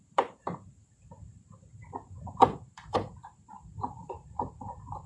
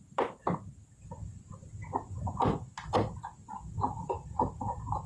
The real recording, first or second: second